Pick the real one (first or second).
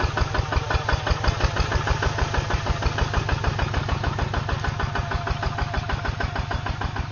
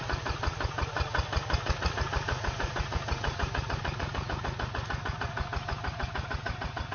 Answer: first